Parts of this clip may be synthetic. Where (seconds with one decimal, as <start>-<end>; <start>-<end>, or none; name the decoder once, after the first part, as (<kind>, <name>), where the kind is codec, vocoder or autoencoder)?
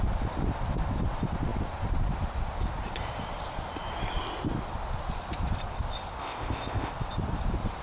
6.2-6.9 (codec, ZipCodec)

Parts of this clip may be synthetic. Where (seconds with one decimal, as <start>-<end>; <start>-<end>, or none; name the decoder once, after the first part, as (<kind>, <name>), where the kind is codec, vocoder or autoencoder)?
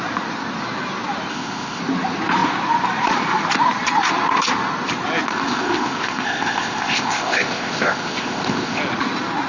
1.3-1.8 (codec, ZipCodec); 5.3-8.8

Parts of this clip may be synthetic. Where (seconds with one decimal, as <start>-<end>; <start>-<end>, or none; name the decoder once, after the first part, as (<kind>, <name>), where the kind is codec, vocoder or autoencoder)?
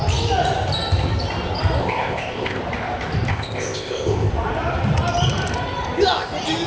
1.8-2.6 (codec, ZipCodec); 3.3-4.3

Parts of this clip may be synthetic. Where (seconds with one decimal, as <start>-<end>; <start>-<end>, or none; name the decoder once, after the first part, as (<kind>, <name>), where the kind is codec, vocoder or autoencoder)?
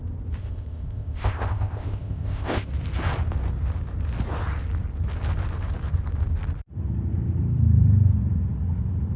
0.4-2.7 (codec, ZipCodec)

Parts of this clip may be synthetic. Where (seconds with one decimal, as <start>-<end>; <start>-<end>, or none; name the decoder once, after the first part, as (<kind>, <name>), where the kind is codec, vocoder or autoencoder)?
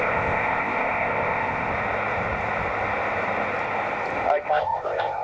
0.0-1.7 (codec, ZipCodec); 4.5-5.2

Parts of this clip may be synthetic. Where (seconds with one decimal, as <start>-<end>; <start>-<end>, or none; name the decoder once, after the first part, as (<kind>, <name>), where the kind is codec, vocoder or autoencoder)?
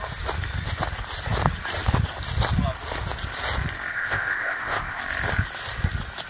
3.9-5.0 (codec, ZipCodec)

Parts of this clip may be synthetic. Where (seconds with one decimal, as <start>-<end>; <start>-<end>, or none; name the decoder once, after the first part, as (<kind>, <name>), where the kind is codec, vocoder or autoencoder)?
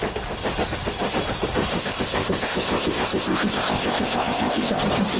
1.7-4.8 (codec, ZipCodec)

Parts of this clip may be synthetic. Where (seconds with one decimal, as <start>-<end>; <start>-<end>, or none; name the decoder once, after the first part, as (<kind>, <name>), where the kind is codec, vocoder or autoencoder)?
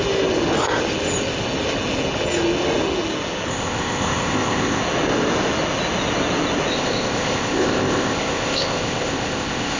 3.5-4.8 (codec, ZipCodec); 6.7-9.8